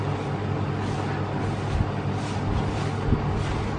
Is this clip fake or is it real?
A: real